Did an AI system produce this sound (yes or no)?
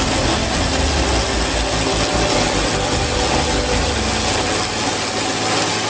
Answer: no